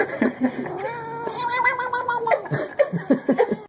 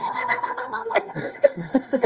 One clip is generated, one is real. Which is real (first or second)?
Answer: first